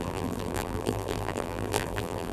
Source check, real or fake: fake